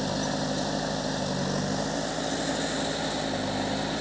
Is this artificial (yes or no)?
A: no